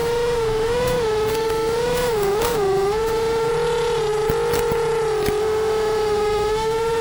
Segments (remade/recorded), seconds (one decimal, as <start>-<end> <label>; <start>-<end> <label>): 0.0-3.5 remade; 3.5-5.4 recorded; 5.4-7.0 remade